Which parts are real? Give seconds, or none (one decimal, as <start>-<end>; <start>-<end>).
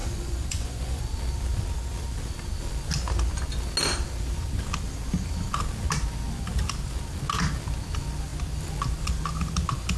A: 1.0-10.0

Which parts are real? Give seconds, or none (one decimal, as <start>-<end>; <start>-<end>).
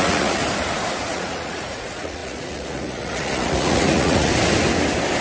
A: 0.4-1.0; 4.3-5.2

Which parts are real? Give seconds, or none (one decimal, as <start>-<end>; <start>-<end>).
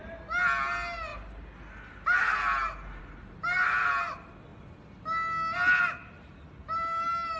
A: 0.0-7.4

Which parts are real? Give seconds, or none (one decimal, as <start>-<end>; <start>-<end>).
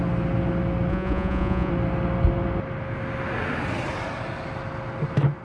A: 0.0-0.9; 1.7-5.4